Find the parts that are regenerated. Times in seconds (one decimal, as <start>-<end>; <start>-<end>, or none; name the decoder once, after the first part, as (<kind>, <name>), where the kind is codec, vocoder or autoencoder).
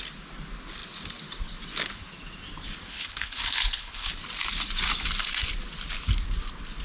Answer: 2.9-4.1 (codec, HILCodec)